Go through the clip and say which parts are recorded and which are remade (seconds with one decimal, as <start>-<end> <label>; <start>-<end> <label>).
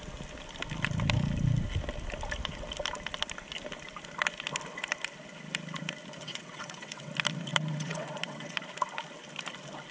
0.0-6.2 recorded; 6.2-7.1 remade; 7.1-7.5 recorded; 7.5-8.6 remade; 8.6-9.9 recorded